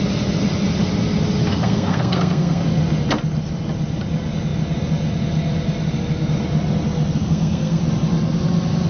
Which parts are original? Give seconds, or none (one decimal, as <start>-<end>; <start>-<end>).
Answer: 0.0-1.5; 2.6-7.2; 7.8-8.9